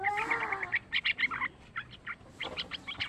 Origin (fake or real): real